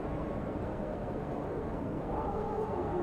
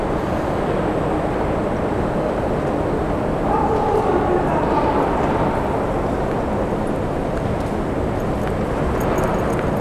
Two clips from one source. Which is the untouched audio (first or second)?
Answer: second